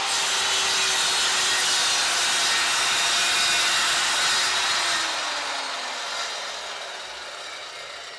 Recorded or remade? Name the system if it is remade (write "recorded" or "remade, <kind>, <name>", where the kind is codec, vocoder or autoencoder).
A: recorded